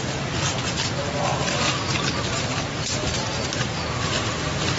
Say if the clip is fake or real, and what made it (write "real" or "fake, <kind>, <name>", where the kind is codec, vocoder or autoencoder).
real